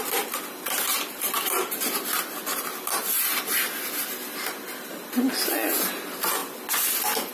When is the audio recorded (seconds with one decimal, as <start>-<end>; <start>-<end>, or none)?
0.0-7.3